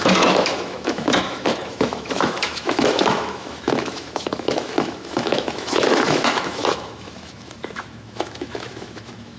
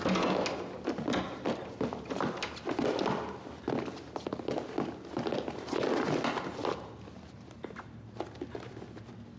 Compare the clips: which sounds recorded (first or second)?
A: second